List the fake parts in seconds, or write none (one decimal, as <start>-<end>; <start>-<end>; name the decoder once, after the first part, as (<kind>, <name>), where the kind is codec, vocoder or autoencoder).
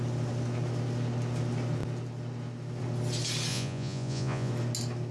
3.5-4.5 (vocoder, Vocos)